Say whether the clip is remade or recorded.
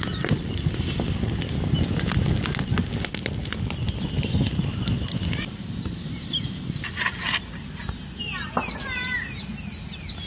recorded